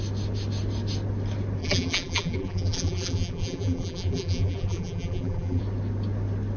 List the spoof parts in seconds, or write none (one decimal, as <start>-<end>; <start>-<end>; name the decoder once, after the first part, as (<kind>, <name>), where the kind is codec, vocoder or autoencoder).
1.6-5.6 (vocoder, BigVGAN v2)

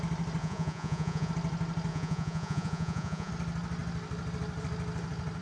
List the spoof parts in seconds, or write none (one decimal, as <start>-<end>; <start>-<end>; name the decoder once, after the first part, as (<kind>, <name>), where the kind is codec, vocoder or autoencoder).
0.4-1.3 (vocoder, Vocos); 1.9-3.3